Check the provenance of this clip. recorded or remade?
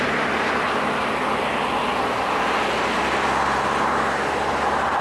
recorded